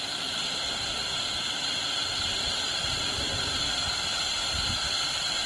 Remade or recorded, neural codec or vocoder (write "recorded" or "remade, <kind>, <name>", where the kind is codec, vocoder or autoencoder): recorded